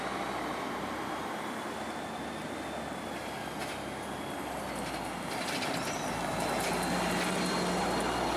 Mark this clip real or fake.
real